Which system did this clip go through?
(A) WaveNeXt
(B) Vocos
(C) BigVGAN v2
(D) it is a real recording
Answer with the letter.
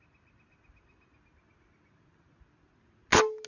D